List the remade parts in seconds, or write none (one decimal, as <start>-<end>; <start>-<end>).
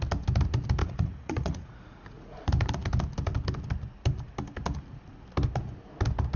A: 0.8-2.5